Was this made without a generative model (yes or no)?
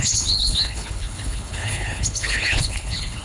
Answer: no